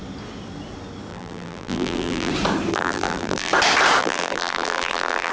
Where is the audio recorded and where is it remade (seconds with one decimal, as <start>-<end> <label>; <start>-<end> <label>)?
0.0-1.1 recorded; 1.1-2.3 remade; 2.3-2.7 recorded; 2.7-3.5 remade; 3.5-4.0 recorded; 4.0-5.3 remade